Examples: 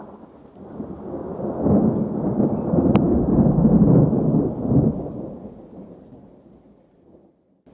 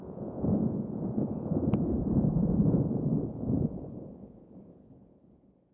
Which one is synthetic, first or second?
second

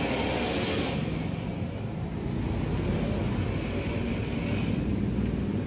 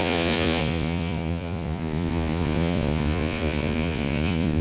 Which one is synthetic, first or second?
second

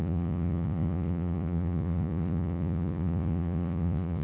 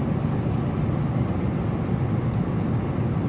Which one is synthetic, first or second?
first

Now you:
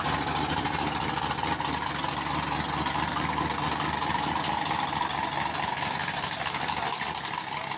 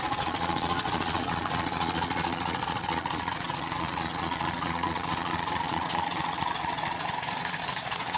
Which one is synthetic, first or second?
second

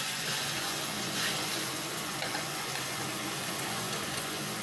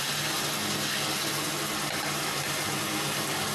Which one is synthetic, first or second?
first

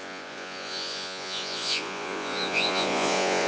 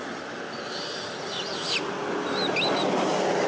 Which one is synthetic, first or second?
first